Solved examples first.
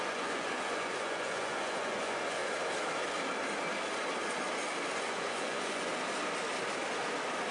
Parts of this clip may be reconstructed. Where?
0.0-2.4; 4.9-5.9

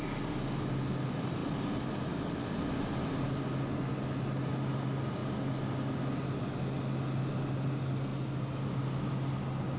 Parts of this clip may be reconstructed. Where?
none

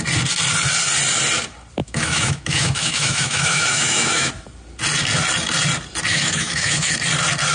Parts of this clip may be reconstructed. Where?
1.8-4.3; 6.1-6.9

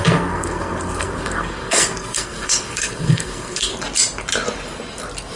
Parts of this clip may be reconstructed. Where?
0.0-3.7

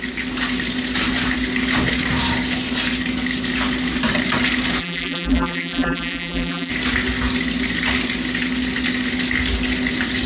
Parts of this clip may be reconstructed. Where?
4.8-6.7

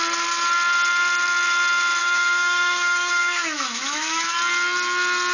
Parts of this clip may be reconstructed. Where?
2.0-4.4